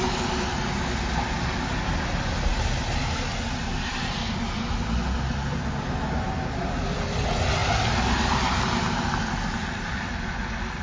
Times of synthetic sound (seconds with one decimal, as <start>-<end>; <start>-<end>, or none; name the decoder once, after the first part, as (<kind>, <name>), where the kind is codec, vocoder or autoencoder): none